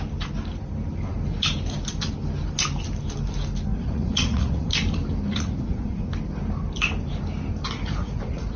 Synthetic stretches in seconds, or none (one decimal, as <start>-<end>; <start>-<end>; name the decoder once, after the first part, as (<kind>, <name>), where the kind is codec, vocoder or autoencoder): 3.7-4.7 (vocoder, Vocos); 5.3-6.1; 8.0-8.6